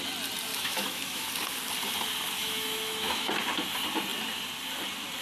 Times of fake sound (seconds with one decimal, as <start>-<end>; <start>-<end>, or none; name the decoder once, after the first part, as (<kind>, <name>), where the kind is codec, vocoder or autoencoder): 0.5-1.3 (autoencoder, DAC-VAE); 2.4-3.3